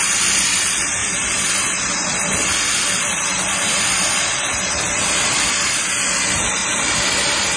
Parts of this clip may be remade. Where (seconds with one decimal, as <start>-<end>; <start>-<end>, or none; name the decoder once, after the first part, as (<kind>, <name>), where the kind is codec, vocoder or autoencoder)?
none